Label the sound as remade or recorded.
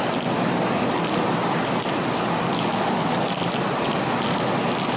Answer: recorded